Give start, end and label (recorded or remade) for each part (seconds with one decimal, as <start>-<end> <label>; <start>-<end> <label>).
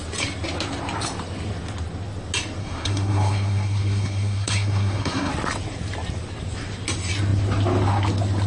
0.0-2.6 recorded; 2.6-5.3 remade; 5.3-8.5 recorded